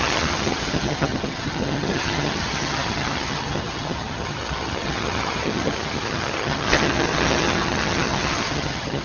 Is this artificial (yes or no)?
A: yes